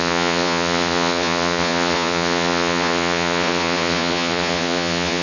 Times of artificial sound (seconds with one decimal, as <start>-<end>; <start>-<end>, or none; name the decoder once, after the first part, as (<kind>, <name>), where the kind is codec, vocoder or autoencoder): 0.0-5.2 (vocoder, Vocos)